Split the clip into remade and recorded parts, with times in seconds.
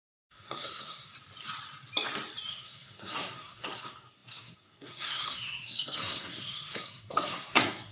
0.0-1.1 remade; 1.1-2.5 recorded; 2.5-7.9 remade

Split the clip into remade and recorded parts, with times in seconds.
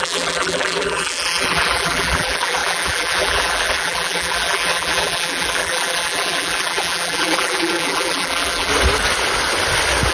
0.0-8.7 remade; 8.7-10.1 recorded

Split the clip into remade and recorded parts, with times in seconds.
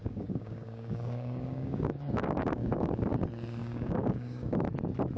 0.0-3.1 remade; 3.1-3.6 recorded; 3.6-4.5 remade; 4.5-5.2 recorded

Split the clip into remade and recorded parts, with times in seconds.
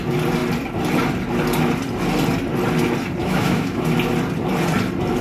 0.0-3.2 recorded; 3.2-3.8 remade; 3.8-5.2 recorded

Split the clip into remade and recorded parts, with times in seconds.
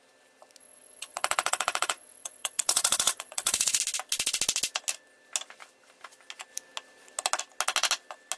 0.0-0.6 recorded; 0.6-3.8 remade; 3.8-8.4 recorded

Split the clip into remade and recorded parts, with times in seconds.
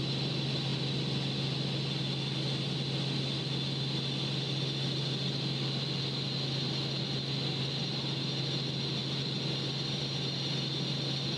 0.0-11.4 recorded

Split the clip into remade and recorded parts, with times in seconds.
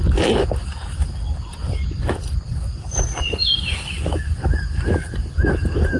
0.0-6.0 recorded